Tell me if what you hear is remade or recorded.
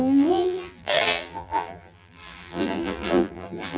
remade